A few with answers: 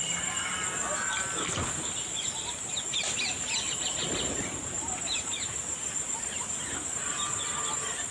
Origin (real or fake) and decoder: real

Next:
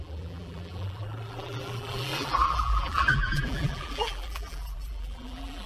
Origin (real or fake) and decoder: fake, vocoder, BigVGAN v2